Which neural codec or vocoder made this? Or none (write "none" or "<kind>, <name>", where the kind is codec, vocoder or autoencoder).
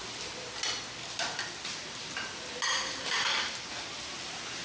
none